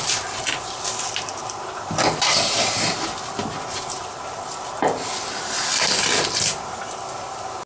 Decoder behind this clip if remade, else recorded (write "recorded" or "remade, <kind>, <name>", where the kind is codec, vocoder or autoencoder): recorded